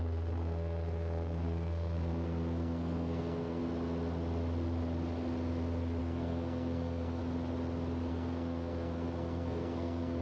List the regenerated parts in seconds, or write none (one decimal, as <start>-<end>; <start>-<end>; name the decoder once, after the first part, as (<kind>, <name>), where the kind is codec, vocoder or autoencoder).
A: 0.0-3.6 (codec, SNAC); 6.0-7.2; 8.1-10.2